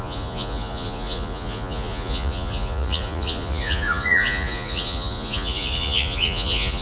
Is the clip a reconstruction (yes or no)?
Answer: yes